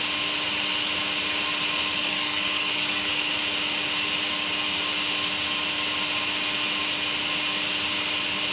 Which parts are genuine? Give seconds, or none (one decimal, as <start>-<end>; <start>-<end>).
0.0-2.0; 3.3-8.5